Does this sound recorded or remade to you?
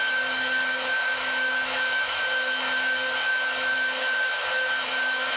remade